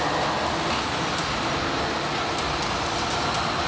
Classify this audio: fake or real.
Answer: real